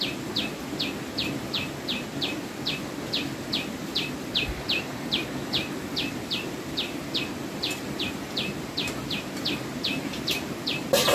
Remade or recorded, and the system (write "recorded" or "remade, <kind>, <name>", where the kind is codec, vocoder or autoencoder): recorded